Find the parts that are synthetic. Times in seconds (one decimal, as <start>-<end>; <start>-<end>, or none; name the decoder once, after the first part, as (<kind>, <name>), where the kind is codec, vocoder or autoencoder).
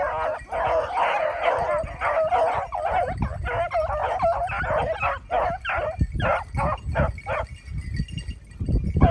none